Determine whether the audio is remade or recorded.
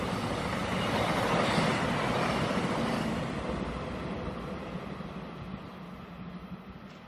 recorded